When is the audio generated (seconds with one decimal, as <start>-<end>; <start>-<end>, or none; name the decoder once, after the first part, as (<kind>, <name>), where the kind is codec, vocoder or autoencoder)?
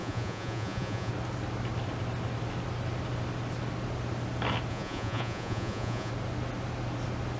0.0-1.1 (vocoder, Vocos); 4.7-6.1